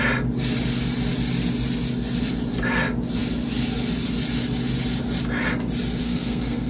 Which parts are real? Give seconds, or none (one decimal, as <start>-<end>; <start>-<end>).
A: 0.0-6.0